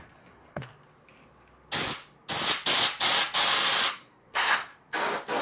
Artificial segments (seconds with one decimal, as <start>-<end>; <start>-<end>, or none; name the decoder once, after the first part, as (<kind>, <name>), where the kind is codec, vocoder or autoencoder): 0.0-0.7 (codec, SNAC); 3.9-4.7